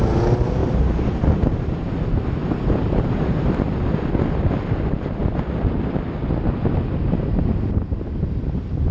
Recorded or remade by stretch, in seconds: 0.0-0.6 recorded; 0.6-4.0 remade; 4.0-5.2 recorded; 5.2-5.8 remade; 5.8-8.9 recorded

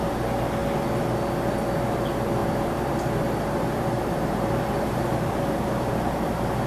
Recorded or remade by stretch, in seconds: 0.0-2.4 recorded; 2.4-6.7 remade